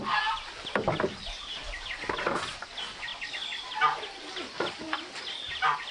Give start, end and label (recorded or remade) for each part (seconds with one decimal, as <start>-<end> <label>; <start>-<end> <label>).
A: 0.0-5.9 recorded